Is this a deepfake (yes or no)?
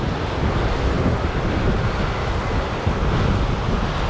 no